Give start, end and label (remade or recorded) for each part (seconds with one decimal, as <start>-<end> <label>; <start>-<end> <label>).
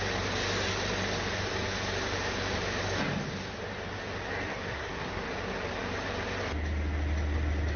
0.0-4.5 recorded; 4.5-5.3 remade; 5.3-7.8 recorded